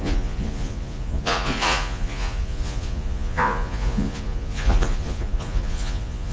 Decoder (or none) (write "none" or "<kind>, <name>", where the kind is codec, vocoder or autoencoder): vocoder, Vocos